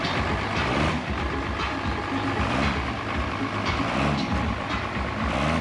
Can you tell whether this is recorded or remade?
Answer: remade